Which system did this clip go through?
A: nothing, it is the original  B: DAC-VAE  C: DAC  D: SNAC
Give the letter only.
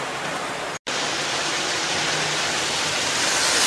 A